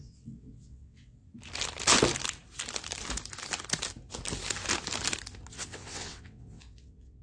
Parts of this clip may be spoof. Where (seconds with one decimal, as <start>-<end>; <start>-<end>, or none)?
0.0-1.2; 5.5-7.2